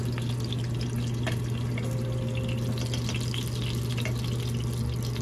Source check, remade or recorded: recorded